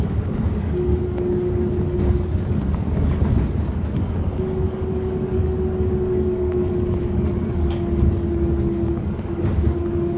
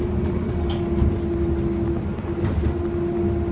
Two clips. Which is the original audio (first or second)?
second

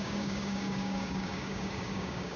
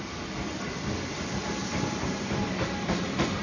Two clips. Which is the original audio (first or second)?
second